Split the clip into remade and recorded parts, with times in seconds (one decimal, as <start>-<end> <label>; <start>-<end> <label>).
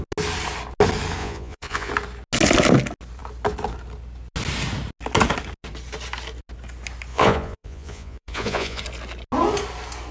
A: 0.0-1.2 recorded; 1.2-1.9 remade; 1.9-7.1 recorded; 7.1-8.8 remade; 8.8-10.1 recorded